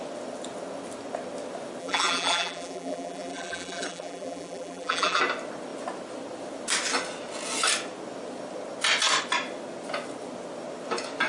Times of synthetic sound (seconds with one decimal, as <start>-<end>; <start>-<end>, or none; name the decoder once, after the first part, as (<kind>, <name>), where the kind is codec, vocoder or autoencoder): 1.8-5.2 (vocoder, BigVGAN v2)